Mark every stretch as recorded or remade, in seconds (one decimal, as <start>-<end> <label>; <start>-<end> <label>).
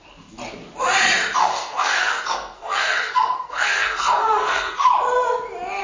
0.0-1.4 recorded; 1.4-4.9 remade; 4.9-5.8 recorded